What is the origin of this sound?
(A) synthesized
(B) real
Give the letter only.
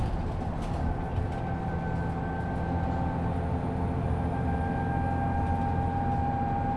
B